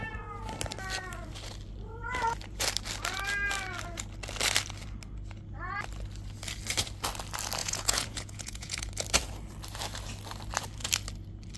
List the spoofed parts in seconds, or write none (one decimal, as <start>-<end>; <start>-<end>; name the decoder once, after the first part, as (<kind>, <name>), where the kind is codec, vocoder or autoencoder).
7.6-8.9 (vocoder, Vocos)